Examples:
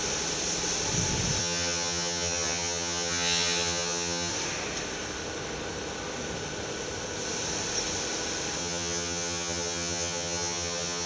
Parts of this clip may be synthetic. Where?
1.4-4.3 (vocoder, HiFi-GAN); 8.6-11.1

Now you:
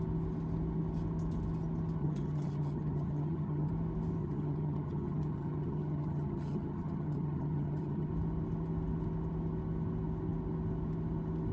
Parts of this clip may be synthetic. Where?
2.0-3.7 (vocoder, HiFi-GAN); 4.2-8.1

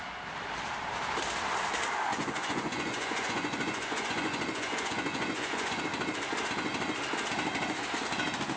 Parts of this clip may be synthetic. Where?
2.1-5.8 (vocoder, Vocos)